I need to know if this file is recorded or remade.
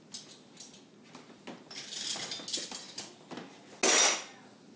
recorded